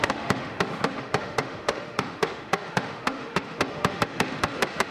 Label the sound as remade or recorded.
remade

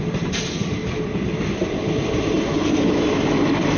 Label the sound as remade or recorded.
recorded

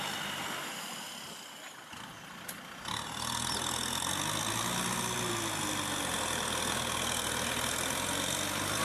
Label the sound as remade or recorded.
recorded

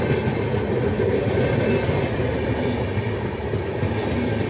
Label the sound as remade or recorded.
recorded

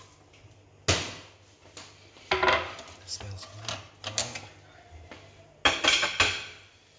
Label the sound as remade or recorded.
recorded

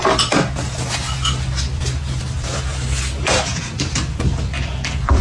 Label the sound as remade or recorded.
recorded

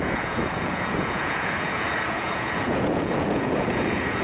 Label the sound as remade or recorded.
remade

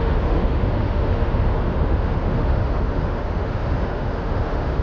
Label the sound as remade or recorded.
remade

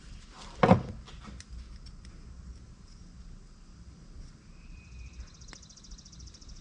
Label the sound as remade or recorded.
recorded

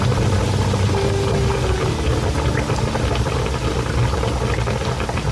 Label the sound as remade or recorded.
recorded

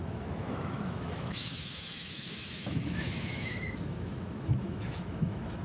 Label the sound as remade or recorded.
remade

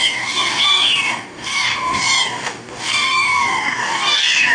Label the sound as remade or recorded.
remade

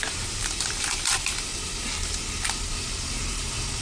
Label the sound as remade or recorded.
recorded